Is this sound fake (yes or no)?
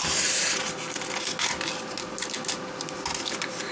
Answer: no